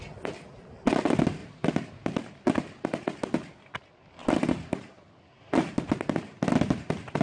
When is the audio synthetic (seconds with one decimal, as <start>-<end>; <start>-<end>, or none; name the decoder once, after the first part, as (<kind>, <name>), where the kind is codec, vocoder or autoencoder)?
1.4-1.9 (vocoder, BigVGAN v2); 4.2-5.1

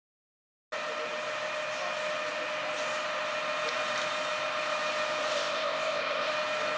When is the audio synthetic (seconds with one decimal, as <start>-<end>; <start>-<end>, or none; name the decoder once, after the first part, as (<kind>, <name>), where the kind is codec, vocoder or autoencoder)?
5.3-6.3 (codec, ZipCodec)

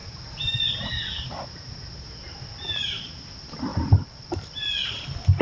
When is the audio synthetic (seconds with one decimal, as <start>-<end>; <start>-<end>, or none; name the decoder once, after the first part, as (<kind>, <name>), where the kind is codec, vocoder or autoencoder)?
3.7-4.7 (vocoder, BigVGAN v2)

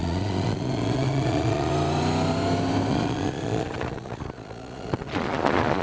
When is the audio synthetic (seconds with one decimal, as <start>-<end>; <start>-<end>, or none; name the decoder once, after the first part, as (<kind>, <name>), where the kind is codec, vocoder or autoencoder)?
0.0-1.7 (vocoder, Vocos); 2.9-5.8

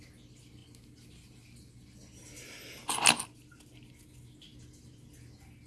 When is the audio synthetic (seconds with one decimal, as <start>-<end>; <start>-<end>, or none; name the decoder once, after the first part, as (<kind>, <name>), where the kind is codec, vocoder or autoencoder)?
none